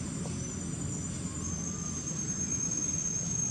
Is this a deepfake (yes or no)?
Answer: no